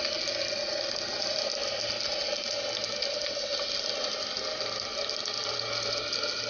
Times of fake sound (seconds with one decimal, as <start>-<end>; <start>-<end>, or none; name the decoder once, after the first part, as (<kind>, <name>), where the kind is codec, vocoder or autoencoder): none